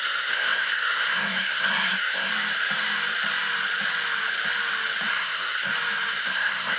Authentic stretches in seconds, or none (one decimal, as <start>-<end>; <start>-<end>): 2.3-5.1; 5.7-6.2